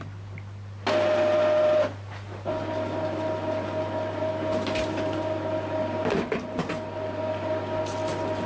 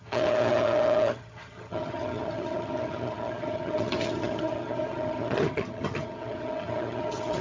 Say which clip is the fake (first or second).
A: second